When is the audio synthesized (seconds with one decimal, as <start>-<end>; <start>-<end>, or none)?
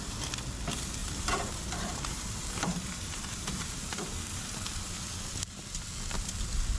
1.0-5.0